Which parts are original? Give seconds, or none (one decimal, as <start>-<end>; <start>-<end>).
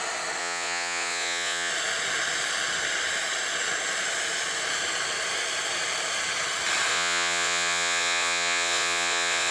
0.0-0.4; 1.7-6.9